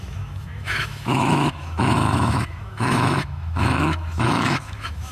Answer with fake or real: fake